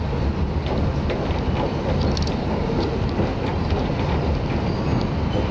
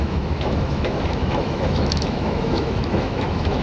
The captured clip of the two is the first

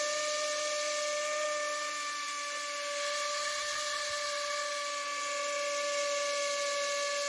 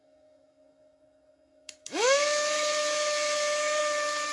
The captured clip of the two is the first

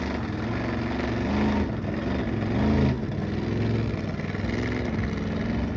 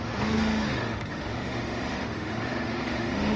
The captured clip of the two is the first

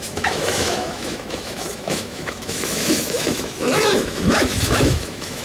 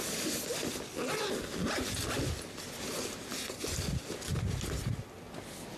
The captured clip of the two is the second